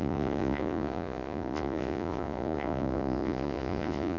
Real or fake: fake